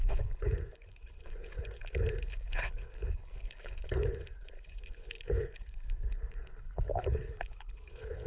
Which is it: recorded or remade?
remade